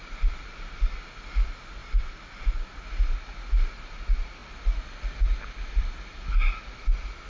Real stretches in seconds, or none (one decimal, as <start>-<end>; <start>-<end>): 0.0-7.3

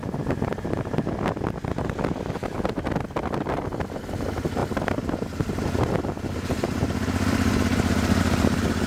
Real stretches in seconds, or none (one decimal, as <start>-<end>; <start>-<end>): 0.0-8.9

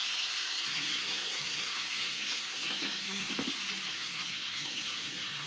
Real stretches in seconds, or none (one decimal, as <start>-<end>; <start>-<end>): 3.3-3.9

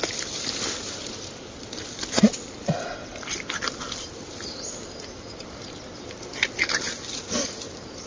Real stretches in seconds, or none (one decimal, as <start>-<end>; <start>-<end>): 0.0-8.1

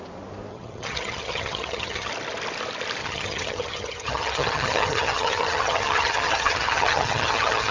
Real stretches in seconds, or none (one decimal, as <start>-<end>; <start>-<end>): 0.0-0.5; 2.1-3.0

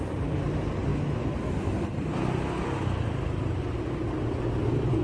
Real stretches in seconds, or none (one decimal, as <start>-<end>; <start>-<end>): 0.0-5.0